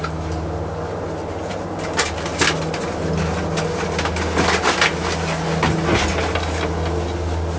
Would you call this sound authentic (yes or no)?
yes